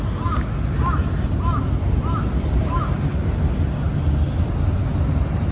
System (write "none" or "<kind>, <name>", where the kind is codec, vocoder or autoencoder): none